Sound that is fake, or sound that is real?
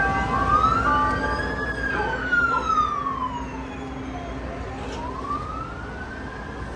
real